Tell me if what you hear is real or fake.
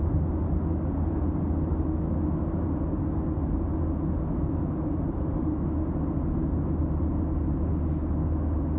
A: real